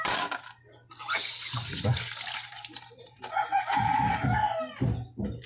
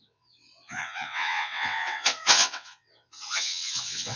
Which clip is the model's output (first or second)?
second